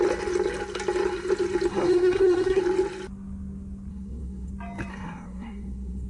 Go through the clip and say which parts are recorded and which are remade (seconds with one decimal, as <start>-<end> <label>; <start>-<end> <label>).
0.0-1.7 recorded; 1.7-2.6 remade; 2.6-3.9 recorded; 3.9-4.5 remade; 4.5-4.9 recorded; 4.9-6.1 remade